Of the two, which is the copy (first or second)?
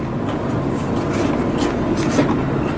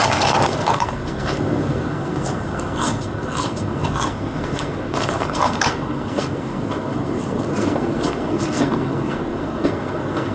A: second